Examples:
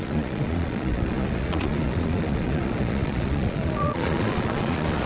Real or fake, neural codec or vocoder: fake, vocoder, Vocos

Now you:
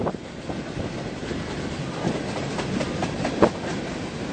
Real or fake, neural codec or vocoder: real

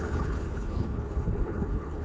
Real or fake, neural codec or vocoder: fake, codec, HILCodec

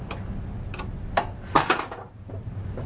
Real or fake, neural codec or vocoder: real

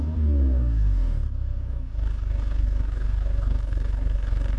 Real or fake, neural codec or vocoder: fake, codec, DAC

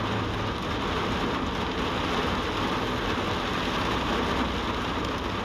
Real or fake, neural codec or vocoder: real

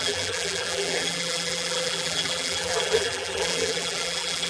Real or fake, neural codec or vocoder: fake, vocoder, BigVGAN v2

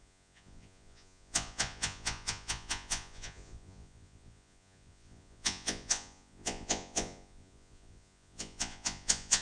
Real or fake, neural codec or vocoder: fake, vocoder, Vocos